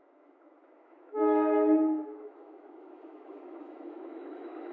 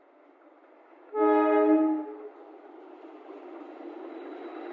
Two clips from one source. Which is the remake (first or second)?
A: first